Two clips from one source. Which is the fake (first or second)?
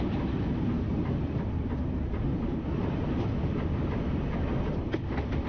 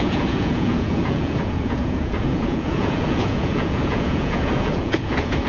second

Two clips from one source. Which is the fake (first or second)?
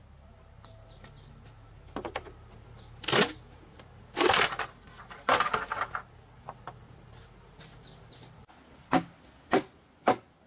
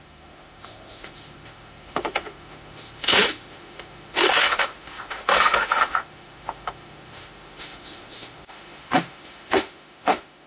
second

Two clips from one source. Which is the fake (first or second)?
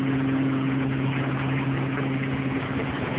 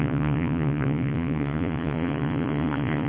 second